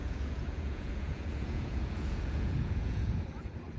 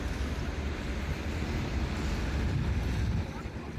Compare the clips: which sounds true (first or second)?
second